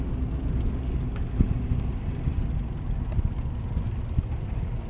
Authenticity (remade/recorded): recorded